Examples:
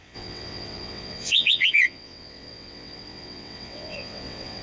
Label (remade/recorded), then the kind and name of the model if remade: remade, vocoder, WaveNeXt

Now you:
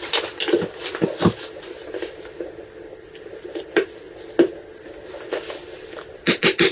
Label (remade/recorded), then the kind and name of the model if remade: recorded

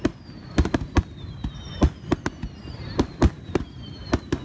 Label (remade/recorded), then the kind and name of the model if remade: recorded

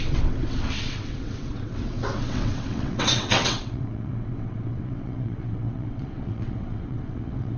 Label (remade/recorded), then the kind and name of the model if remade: remade, vocoder, WaveNeXt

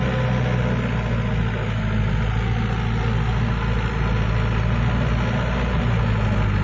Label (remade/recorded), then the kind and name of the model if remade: recorded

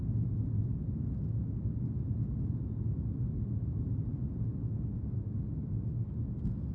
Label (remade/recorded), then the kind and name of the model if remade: recorded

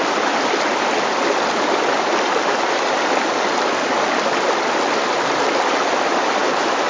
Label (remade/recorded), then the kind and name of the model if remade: recorded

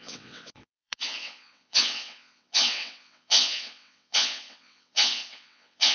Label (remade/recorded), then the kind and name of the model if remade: remade, vocoder, WaveNeXt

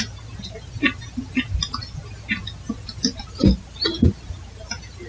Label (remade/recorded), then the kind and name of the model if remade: recorded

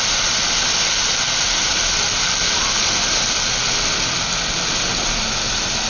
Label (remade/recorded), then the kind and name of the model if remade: recorded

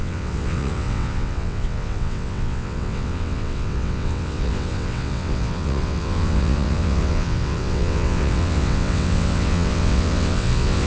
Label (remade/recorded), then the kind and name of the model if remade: remade, vocoder, WaveNeXt